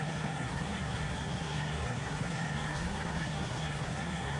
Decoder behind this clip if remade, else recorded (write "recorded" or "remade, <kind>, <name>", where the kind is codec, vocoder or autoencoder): remade, codec, SNAC